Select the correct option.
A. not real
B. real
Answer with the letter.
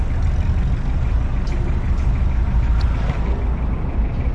B